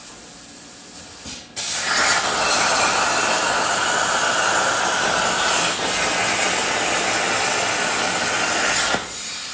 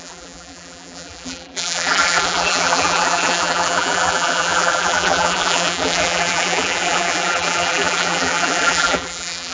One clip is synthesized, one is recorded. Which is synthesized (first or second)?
second